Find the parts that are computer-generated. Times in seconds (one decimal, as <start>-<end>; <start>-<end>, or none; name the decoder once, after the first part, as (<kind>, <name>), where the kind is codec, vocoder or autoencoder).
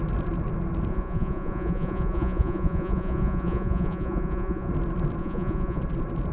0.9-4.7 (vocoder, Vocos); 5.2-5.8